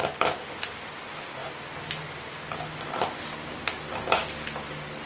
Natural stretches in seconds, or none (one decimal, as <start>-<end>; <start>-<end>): 0.0-5.1